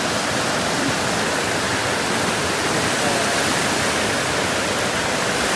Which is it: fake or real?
real